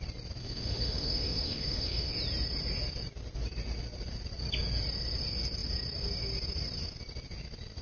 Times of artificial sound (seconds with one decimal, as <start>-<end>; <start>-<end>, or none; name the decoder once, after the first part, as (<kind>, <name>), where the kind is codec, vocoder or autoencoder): 0.4-2.1 (autoencoder, DAC-VAE)